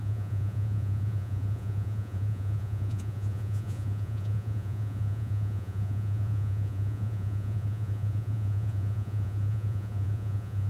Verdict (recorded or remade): remade